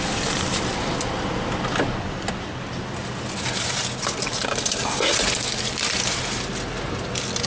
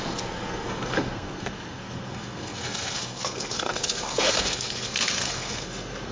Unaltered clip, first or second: first